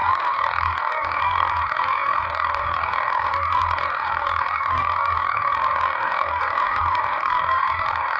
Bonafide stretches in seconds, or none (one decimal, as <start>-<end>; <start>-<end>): none